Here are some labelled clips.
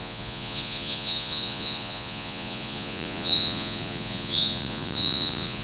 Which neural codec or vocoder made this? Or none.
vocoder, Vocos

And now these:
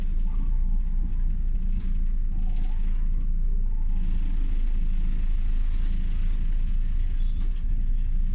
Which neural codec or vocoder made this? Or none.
none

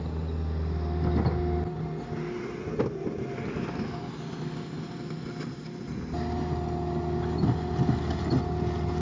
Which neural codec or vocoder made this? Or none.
none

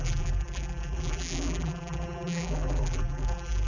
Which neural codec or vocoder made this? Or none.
vocoder, BigVGAN v2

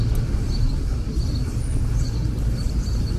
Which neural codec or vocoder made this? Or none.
none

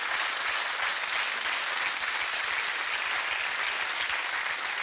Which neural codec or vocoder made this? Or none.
none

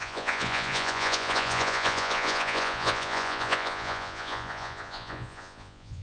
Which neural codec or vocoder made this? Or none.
vocoder, Vocos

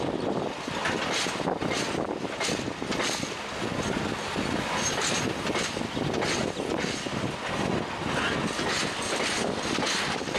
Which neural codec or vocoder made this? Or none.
none